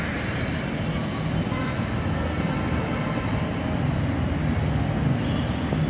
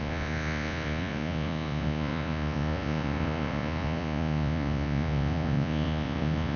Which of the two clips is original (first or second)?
first